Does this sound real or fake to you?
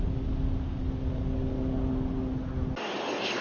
real